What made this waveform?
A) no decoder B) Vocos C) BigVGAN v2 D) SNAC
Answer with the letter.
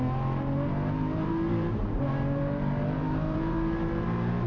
C